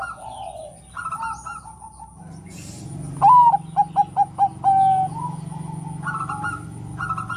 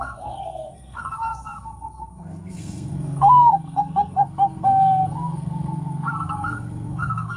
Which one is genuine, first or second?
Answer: first